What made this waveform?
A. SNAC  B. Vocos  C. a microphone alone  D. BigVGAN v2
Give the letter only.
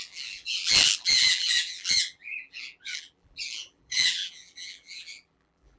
D